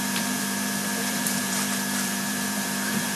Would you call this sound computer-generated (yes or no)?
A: yes